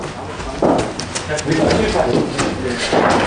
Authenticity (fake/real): real